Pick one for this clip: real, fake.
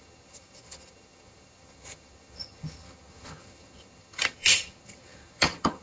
fake